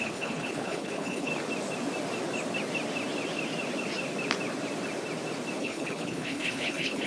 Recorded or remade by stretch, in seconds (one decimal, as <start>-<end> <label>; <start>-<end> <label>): 0.0-1.3 remade; 1.3-5.6 recorded; 5.6-7.1 remade